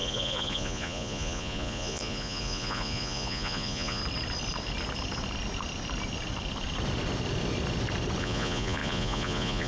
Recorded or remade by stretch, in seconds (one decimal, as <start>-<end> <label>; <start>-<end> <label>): 0.0-4.0 remade; 4.0-8.2 recorded; 8.2-9.7 remade